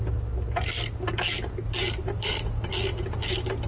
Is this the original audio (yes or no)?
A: yes